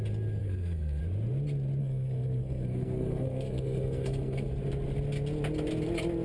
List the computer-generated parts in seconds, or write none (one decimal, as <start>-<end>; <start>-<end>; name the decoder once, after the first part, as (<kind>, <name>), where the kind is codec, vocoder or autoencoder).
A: 0.4-1.0 (codec, SNAC); 1.8-4.5